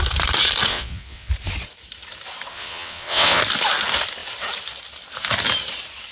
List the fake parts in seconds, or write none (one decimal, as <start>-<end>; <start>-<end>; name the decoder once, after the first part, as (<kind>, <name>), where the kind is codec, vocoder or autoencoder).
0.7-1.3 (vocoder, WaveNeXt); 2.5-3.4